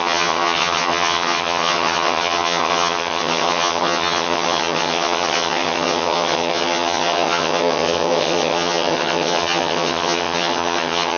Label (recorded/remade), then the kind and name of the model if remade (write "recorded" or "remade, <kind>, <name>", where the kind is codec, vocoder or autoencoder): remade, vocoder, HiFi-GAN